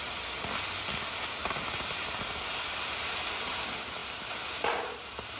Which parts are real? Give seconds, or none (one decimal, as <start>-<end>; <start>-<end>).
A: 0.0-5.4